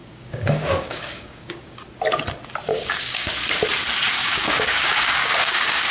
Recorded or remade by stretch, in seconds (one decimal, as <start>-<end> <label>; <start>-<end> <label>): 0.0-1.8 remade; 1.8-2.7 recorded; 2.7-3.3 remade; 3.3-4.2 recorded; 4.2-5.9 remade